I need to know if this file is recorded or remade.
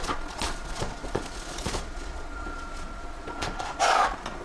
remade